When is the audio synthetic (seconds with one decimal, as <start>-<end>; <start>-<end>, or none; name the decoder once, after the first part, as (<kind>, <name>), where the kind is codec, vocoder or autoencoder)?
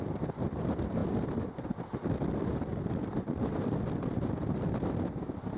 0.0-5.6 (vocoder, BigVGAN v2)